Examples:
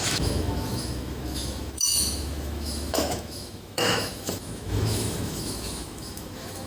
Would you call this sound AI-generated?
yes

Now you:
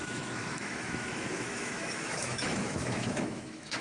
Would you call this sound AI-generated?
yes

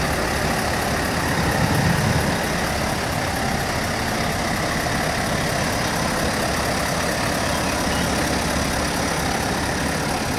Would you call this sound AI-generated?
no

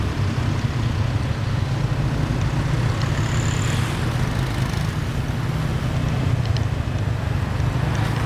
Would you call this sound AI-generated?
no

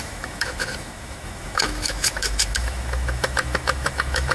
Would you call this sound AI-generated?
yes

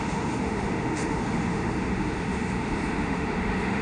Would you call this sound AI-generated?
yes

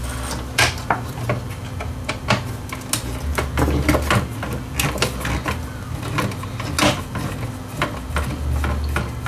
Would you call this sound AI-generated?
no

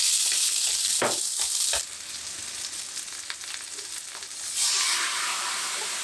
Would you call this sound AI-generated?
no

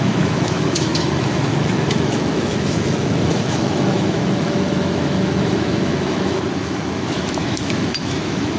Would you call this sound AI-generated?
yes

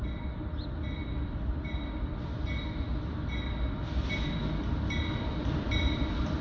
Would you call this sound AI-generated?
no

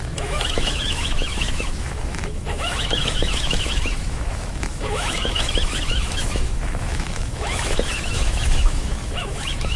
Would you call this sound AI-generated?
yes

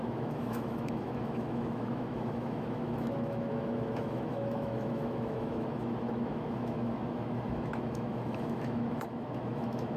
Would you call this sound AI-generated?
yes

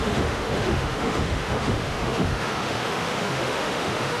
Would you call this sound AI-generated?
yes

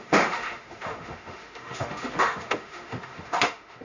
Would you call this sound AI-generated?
yes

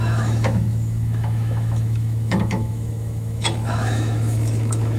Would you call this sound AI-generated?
yes